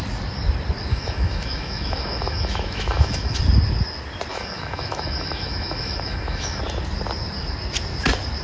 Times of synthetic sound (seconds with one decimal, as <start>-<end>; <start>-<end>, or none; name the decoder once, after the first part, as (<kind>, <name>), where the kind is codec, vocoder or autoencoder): 0.9-3.4 (autoencoder, DAC-VAE); 4.3-6.6